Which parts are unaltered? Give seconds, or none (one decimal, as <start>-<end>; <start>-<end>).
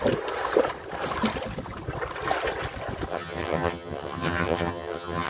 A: 0.0-3.1